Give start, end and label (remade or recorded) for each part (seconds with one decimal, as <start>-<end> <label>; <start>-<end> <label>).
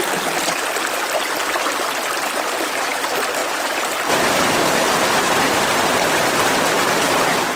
0.0-3.4 recorded; 3.4-5.8 remade; 5.8-7.6 recorded